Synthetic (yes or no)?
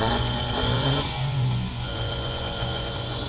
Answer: yes